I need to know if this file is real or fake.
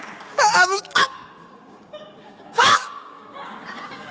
fake